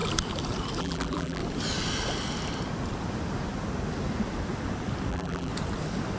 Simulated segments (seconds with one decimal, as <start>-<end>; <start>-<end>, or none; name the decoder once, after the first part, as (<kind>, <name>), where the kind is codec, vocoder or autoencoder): 0.8-1.4 (vocoder, BigVGAN v2); 5.1-5.5